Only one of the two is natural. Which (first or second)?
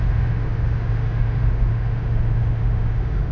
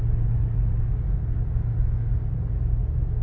second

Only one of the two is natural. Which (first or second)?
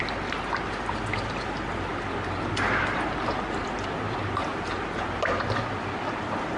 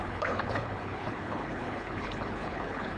first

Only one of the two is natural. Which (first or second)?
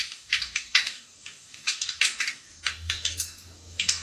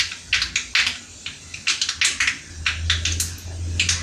second